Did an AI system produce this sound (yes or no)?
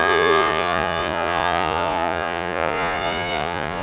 yes